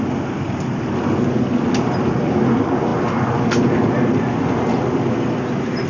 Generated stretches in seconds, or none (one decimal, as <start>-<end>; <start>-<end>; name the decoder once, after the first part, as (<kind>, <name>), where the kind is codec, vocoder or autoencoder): none